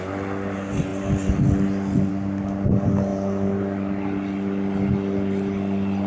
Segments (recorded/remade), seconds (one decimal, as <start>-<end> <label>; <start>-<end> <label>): 0.0-6.1 recorded

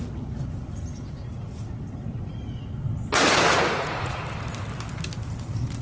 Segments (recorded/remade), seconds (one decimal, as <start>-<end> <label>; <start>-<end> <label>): 0.0-2.1 recorded; 2.1-2.6 remade; 2.6-3.5 recorded; 3.5-4.2 remade; 4.2-5.8 recorded